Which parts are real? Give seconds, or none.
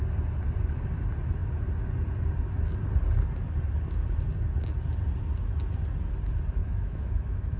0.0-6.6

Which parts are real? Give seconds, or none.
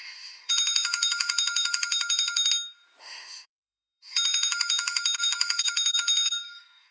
2.5-3.0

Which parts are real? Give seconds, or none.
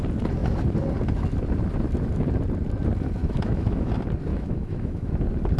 0.0-3.2; 3.9-4.3; 5.1-5.6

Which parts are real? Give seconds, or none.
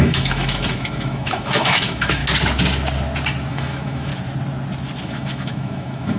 2.2-3.5; 4.1-5.0